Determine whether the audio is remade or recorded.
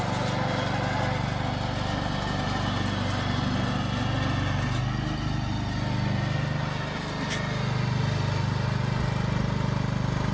recorded